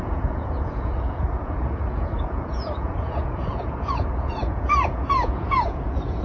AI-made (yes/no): yes